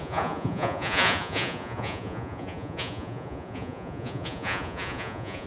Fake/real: fake